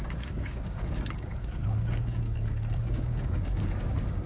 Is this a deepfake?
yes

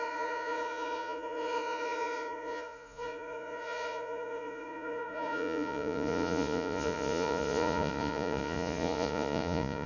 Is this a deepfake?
yes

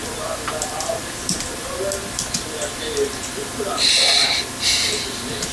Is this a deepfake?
no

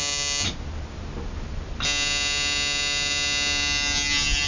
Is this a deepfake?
no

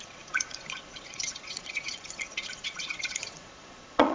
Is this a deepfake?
yes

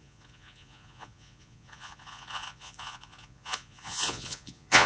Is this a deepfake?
yes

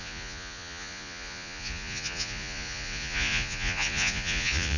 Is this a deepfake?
yes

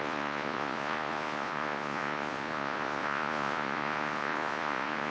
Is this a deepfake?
yes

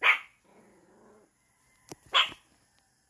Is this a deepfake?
no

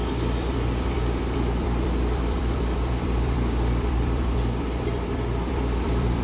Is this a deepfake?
yes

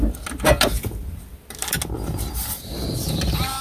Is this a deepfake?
no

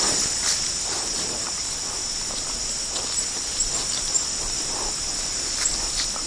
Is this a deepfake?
no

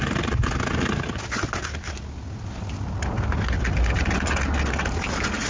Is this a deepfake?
no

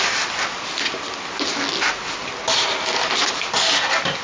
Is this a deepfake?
no